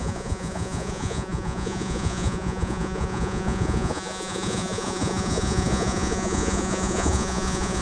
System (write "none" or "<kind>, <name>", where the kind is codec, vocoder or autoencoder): vocoder, Vocos